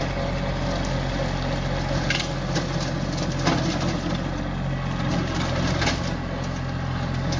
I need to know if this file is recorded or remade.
recorded